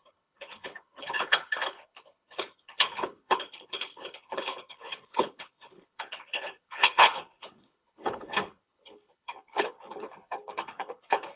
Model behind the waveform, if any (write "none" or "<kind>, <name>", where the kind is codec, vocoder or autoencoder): codec, HILCodec